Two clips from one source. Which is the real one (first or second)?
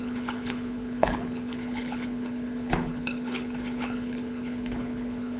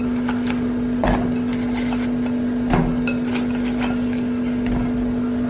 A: second